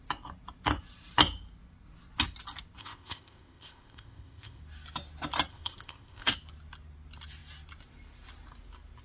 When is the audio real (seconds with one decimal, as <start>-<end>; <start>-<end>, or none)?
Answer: 0.0-2.8; 4.6-5.5; 6.3-9.0